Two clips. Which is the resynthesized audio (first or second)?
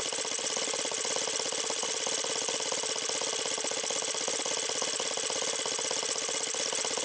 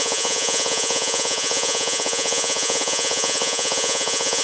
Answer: second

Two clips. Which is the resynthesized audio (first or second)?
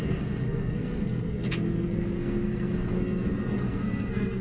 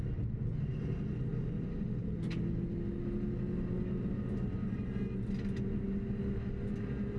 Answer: first